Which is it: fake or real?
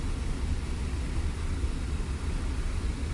real